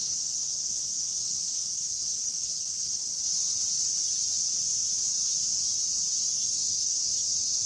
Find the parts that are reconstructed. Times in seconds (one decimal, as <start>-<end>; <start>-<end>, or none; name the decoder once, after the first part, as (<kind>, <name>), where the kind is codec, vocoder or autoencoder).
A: 0.0-1.7 (autoencoder, DAC-VAE); 6.3-7.7